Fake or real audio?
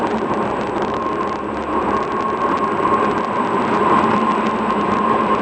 fake